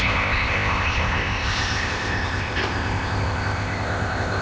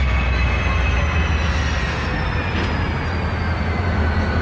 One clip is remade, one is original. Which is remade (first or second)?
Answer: first